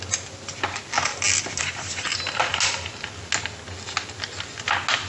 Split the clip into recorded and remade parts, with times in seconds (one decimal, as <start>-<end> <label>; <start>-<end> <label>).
0.0-5.1 recorded